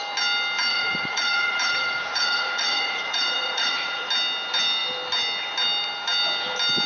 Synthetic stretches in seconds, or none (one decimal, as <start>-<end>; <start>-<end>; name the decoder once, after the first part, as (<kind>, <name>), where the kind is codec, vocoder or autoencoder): 0.7-4.1 (vocoder, Vocos)